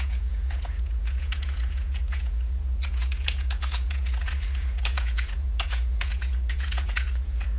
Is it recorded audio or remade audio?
remade